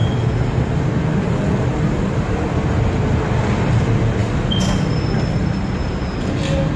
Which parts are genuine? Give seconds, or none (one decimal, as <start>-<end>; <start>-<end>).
0.0-6.8